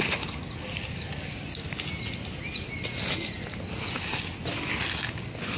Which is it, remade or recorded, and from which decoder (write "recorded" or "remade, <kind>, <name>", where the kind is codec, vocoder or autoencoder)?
recorded